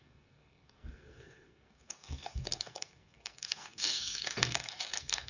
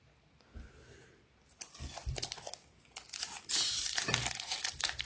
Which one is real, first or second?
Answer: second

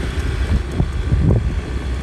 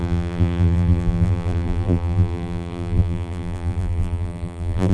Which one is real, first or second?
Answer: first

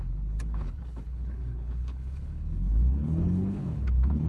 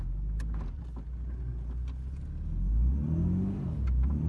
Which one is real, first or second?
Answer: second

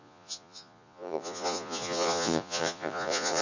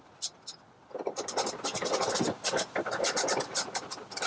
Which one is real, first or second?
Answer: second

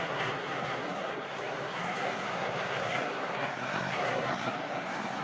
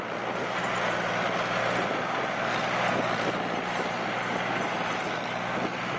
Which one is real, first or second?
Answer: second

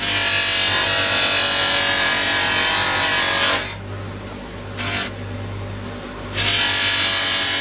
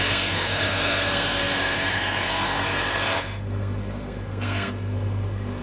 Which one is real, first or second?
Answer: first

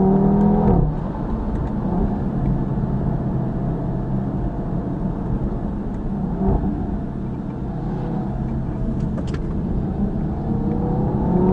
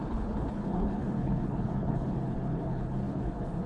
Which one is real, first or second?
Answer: first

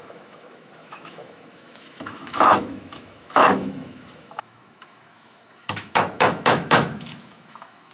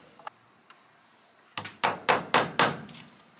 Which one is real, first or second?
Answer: second